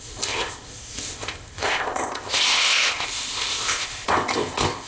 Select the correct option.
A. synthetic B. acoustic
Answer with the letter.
A